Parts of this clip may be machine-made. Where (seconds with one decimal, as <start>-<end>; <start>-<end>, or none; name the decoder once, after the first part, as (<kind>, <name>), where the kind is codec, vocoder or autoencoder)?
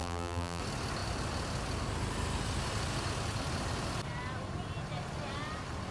0.0-0.6 (vocoder, BigVGAN v2)